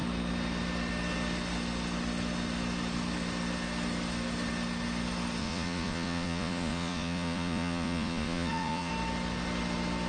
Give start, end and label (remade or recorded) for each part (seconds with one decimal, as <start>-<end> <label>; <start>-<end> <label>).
0.0-5.4 recorded; 5.4-8.9 remade; 8.9-10.1 recorded